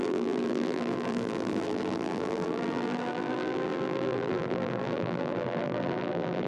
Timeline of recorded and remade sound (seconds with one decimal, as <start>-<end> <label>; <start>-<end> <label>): 0.0-6.5 remade